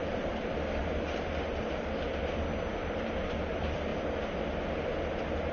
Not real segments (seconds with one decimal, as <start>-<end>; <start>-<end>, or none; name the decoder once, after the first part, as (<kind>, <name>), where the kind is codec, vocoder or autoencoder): 0.0-0.8 (vocoder, BigVGAN v2); 1.6-3.9